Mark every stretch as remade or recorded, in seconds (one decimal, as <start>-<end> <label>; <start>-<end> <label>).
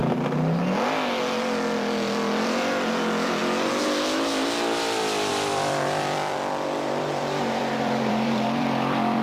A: 0.0-2.4 recorded; 2.4-3.4 remade; 3.4-5.3 recorded; 5.3-9.2 remade